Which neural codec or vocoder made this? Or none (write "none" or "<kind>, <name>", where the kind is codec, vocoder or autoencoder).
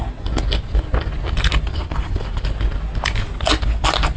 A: none